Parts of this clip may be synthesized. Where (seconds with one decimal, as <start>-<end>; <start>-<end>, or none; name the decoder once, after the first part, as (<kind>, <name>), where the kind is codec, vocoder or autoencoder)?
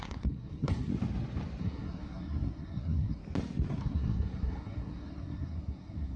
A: 0.0-0.9 (codec, SNAC); 1.6-3.2; 3.8-6.2